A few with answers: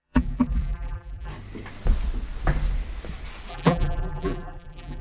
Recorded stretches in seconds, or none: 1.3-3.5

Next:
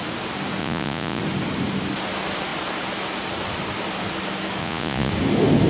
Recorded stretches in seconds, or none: 0.0-0.6; 1.2-4.6; 5.1-5.7

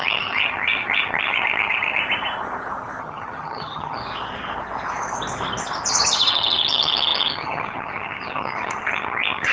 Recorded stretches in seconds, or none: 2.0-3.0; 4.0-5.9

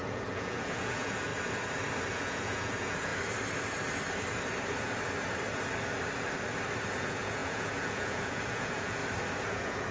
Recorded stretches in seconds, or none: 1.3-2.1; 3.1-7.0; 9.0-9.5

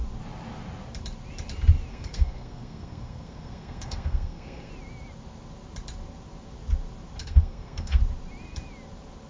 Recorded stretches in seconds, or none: 0.0-1.9; 4.7-7.2; 8.0-9.3